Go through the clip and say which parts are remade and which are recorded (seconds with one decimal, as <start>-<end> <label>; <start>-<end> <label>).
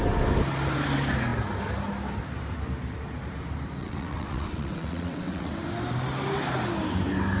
0.0-3.8 recorded; 3.8-5.5 remade; 5.5-7.4 recorded